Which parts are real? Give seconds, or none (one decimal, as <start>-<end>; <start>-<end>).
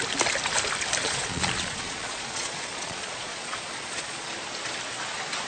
0.0-1.0; 4.3-5.5